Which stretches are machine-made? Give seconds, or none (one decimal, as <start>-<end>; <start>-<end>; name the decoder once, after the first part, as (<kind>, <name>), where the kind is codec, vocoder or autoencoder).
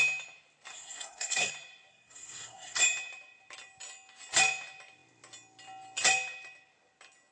0.7-1.5 (codec, SNAC); 1.9-2.8